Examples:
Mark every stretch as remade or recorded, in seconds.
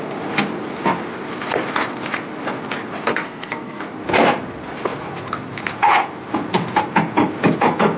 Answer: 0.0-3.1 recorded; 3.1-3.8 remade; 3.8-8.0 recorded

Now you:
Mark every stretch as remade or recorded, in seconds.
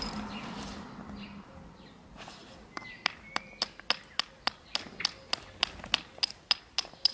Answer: 0.0-7.1 recorded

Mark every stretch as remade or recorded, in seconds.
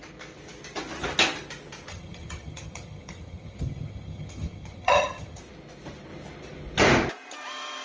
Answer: 0.0-1.9 recorded; 1.9-5.4 remade; 5.4-7.8 recorded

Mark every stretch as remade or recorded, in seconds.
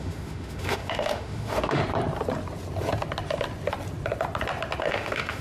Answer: 0.0-1.8 remade; 1.8-4.8 recorded; 4.8-5.4 remade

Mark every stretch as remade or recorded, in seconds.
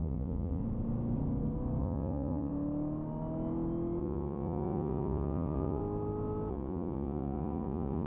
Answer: 0.0-0.6 remade; 0.6-1.8 recorded; 1.8-2.5 remade; 2.5-4.0 recorded; 4.0-5.8 remade; 5.8-6.5 recorded; 6.5-8.1 remade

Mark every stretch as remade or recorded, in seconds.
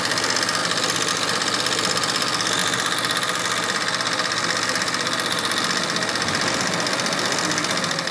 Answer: 0.0-8.1 recorded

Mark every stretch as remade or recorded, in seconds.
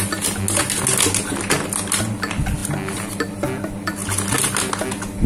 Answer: 0.0-5.3 recorded